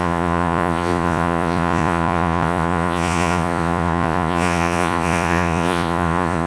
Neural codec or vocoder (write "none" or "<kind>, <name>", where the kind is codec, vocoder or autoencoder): vocoder, Vocos